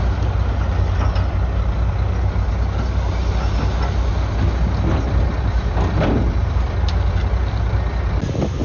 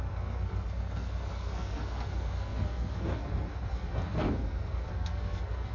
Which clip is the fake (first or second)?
second